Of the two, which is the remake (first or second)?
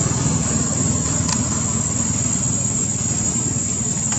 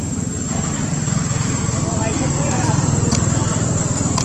second